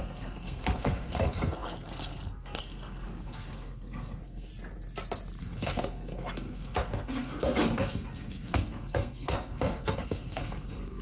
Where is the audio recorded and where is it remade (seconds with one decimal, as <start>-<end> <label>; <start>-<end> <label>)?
0.0-4.5 remade; 4.5-5.4 recorded; 5.4-11.0 remade